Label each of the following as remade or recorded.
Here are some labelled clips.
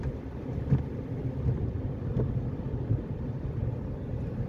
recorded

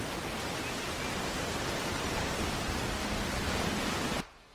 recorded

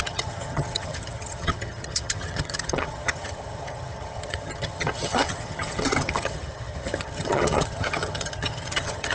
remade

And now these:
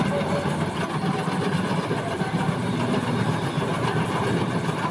recorded